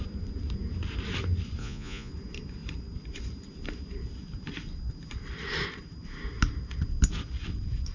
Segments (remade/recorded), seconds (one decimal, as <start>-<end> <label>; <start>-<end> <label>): 0.0-1.6 recorded; 1.6-2.1 remade; 2.1-7.9 recorded